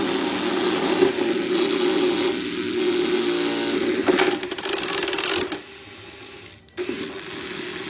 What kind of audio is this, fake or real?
real